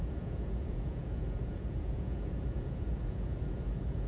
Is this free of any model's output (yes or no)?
no